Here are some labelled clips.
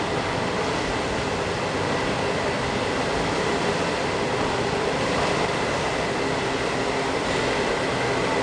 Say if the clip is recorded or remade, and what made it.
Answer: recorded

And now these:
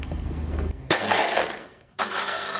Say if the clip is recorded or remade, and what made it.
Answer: remade, codec, SNAC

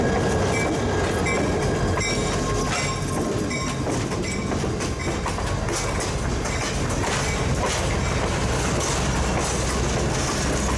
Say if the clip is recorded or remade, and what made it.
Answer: recorded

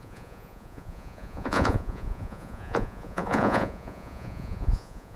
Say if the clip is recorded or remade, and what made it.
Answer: remade, vocoder, Vocos